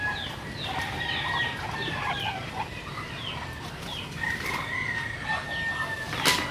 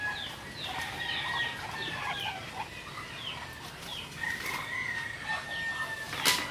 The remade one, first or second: first